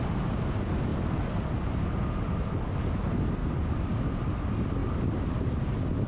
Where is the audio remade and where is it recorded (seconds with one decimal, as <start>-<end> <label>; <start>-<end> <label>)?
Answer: 0.0-3.4 recorded; 3.4-4.2 remade; 4.2-6.1 recorded

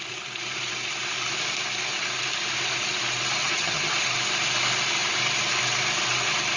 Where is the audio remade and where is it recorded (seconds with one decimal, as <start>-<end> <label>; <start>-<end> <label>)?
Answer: 0.0-3.4 recorded; 3.4-3.9 remade; 3.9-6.6 recorded

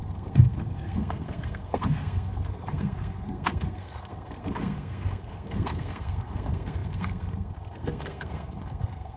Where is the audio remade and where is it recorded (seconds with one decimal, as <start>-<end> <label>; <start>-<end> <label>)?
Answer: 0.0-9.2 remade